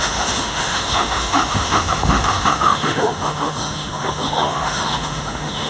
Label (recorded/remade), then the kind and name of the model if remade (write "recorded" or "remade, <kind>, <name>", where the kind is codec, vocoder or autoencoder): remade, autoencoder, DAC-VAE